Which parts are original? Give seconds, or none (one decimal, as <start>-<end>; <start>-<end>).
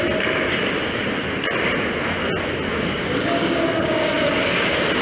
0.0-2.7; 4.4-5.0